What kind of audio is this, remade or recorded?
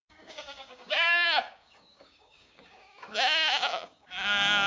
remade